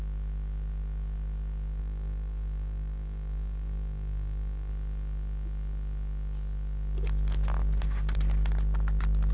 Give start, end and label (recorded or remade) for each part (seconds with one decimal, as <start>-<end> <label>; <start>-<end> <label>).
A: 0.0-1.8 recorded; 1.8-4.7 remade; 4.7-9.3 recorded